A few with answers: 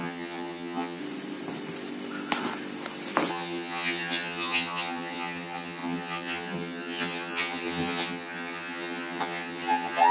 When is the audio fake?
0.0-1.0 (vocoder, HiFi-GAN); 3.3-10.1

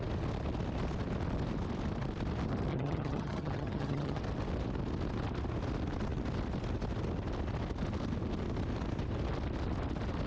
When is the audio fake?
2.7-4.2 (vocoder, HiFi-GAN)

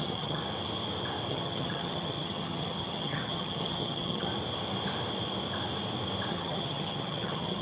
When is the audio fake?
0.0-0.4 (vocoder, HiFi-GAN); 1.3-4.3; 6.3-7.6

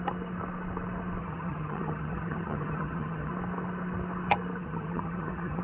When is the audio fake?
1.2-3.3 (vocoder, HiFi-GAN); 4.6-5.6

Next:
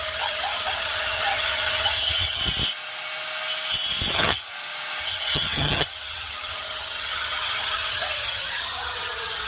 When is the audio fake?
0.0-2.4 (vocoder, HiFi-GAN); 4.1-4.5; 5.0-9.5

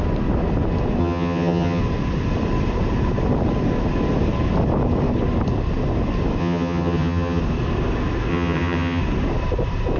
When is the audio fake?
1.0-1.8 (vocoder, HiFi-GAN); 6.4-7.4; 8.3-9.0

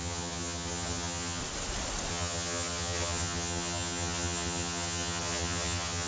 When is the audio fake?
0.0-1.4 (vocoder, HiFi-GAN); 2.1-6.1

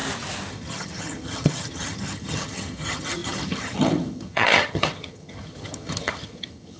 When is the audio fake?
0.5-6.8 (vocoder, HiFi-GAN)